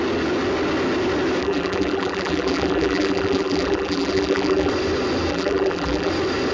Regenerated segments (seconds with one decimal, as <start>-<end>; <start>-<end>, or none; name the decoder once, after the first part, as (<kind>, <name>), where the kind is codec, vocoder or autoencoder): 1.4-4.7 (vocoder, BigVGAN v2); 5.3-6.1